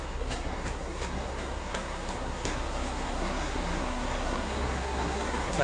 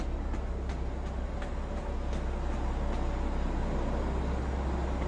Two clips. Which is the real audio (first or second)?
second